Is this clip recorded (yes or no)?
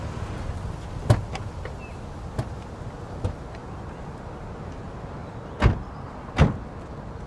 yes